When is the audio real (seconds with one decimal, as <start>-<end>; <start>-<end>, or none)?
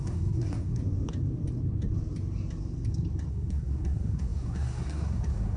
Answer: 0.8-3.3